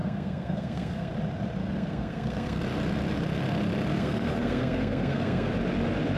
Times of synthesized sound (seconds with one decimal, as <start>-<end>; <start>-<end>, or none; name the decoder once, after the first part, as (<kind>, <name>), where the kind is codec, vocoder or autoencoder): 0.0-1.1 (codec, SNAC); 1.6-2.6; 3.9-5.5